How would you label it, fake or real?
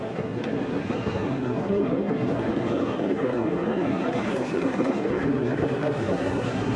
fake